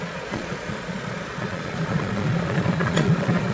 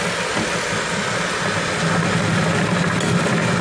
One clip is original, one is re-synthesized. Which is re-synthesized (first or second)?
first